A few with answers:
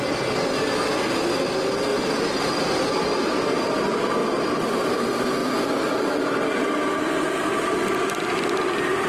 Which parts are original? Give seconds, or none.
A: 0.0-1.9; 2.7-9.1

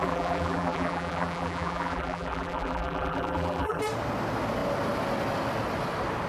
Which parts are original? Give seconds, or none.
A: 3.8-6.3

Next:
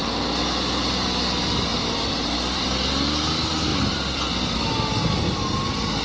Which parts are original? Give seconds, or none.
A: 0.0-1.7; 2.9-3.7; 4.6-6.0

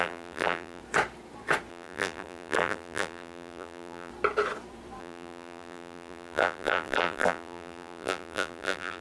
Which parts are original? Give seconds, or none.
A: 0.8-1.7; 4.1-5.0

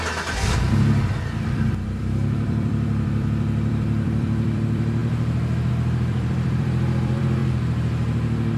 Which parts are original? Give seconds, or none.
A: 5.0-5.7; 7.4-8.6

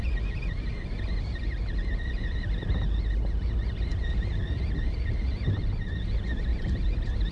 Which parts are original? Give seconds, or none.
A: 0.0-6.5